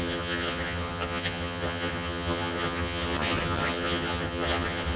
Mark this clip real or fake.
fake